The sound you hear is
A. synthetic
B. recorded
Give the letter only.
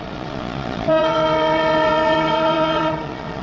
A